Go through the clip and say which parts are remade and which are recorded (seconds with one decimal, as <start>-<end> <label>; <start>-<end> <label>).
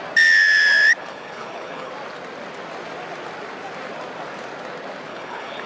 0.0-1.0 recorded; 1.0-1.9 remade; 1.9-5.1 recorded; 5.1-5.7 remade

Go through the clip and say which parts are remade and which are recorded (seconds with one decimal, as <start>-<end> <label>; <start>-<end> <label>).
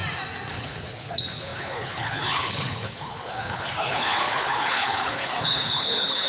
0.0-0.5 recorded; 0.5-6.3 remade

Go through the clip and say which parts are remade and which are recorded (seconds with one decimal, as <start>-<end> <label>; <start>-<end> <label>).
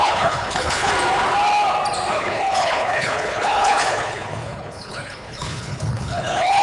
0.0-0.9 remade; 0.9-2.1 recorded; 2.1-6.6 remade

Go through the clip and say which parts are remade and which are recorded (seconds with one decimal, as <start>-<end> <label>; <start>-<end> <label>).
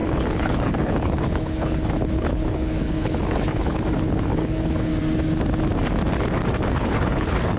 0.0-4.9 remade; 4.9-6.7 recorded; 6.7-7.6 remade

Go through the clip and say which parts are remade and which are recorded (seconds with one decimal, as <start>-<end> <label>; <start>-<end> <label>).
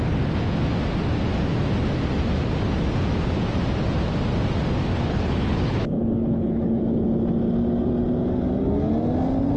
0.0-5.1 recorded; 5.1-6.8 remade; 6.8-9.6 recorded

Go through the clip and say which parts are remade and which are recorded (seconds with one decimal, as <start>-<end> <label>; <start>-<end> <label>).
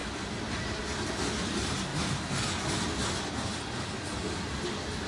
0.0-5.1 recorded